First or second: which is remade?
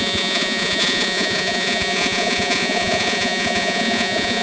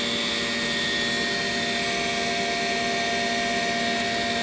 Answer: first